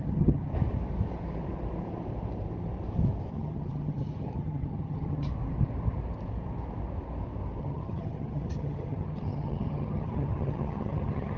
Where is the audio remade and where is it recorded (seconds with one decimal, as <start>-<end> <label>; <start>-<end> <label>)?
0.0-0.5 remade; 0.5-3.3 recorded; 3.3-5.3 remade; 5.3-7.6 recorded; 7.6-11.4 remade